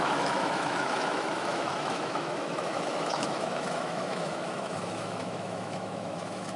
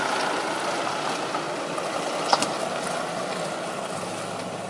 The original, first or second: second